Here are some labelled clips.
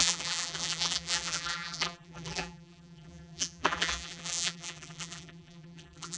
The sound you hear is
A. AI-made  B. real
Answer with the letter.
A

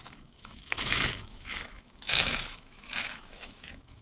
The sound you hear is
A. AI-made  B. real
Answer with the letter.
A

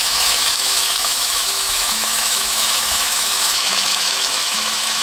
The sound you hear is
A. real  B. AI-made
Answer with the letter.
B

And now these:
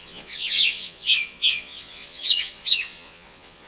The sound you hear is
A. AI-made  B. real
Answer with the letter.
A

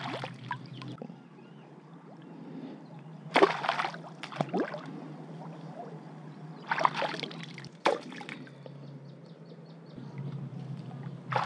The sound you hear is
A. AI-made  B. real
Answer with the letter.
B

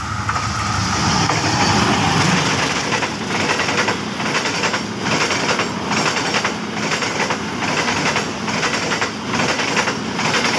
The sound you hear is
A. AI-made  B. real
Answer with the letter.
B